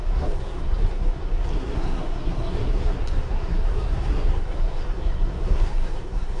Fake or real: fake